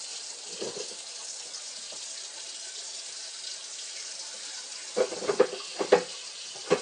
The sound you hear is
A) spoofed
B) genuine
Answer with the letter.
B